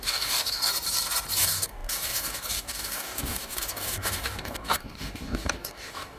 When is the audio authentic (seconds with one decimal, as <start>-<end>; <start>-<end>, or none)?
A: 0.7-1.4